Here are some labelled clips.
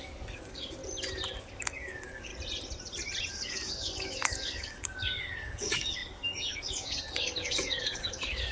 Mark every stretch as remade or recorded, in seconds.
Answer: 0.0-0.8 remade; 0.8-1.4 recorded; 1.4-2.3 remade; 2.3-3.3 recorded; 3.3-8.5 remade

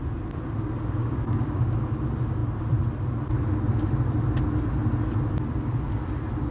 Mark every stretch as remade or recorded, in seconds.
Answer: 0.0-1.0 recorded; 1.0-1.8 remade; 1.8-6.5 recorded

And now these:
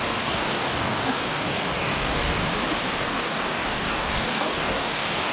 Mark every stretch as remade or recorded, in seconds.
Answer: 0.0-2.4 remade; 2.4-3.0 recorded; 3.0-5.3 remade

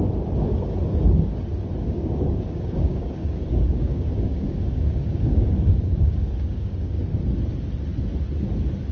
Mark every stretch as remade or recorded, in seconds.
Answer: 0.0-1.8 recorded; 1.8-7.0 remade; 7.0-8.9 recorded